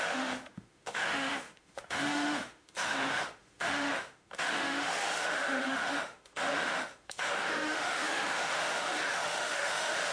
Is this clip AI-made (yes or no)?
yes